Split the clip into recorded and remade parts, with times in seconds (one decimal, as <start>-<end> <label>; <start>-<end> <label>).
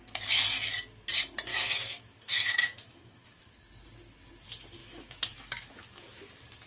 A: 0.0-1.5 recorded; 1.5-3.5 remade; 3.5-4.8 recorded; 4.8-6.3 remade; 6.3-6.7 recorded